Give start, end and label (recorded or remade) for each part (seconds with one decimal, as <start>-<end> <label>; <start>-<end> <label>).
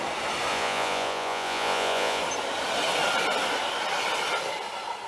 0.0-0.5 recorded; 0.5-2.2 remade; 2.2-5.1 recorded